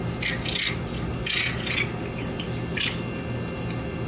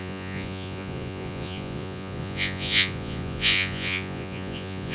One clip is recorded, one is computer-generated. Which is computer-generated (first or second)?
second